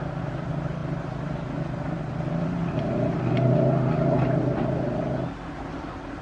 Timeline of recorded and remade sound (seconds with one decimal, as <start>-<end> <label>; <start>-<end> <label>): 0.0-6.2 recorded